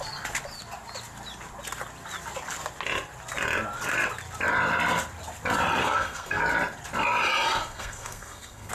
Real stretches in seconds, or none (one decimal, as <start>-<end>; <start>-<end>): 0.0-5.8; 6.4-7.6